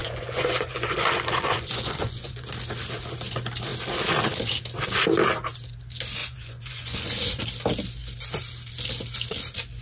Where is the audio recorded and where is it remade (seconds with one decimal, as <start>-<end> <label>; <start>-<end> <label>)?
0.0-2.5 remade; 2.5-6.2 recorded; 6.2-7.4 remade; 7.4-9.8 recorded